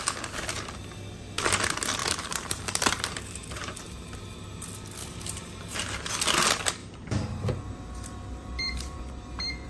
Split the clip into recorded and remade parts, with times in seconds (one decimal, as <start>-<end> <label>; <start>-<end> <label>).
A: 0.0-2.0 recorded; 2.0-4.1 remade; 4.1-5.0 recorded; 5.0-6.1 remade; 6.1-6.8 recorded; 6.8-9.0 remade; 9.0-9.7 recorded